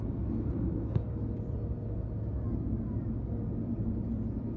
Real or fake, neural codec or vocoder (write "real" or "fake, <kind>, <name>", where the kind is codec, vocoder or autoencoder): real